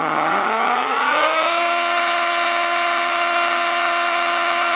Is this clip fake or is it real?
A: fake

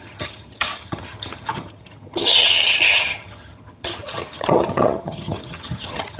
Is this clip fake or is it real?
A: fake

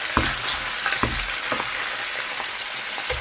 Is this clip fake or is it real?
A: real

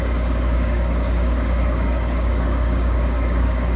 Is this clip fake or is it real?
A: fake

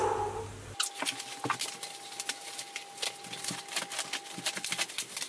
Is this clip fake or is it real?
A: real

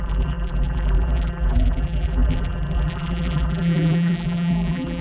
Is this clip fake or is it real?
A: fake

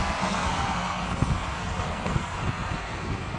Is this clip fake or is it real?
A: fake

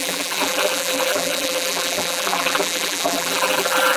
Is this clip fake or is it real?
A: fake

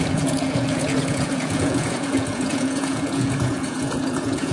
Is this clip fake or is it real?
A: fake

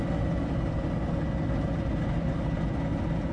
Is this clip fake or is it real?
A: real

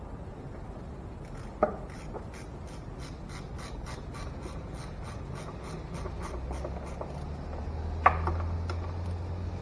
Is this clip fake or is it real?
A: real